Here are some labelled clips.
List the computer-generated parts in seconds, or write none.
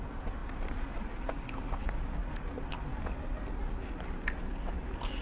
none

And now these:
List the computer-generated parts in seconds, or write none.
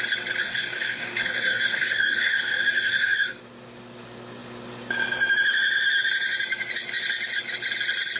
0.4-3.4 (codec, DAC)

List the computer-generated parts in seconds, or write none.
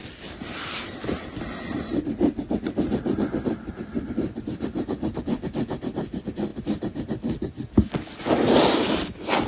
none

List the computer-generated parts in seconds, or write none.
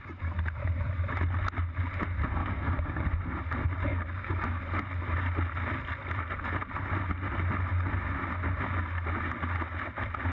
2.4-3.1 (codec, DAC); 3.9-4.6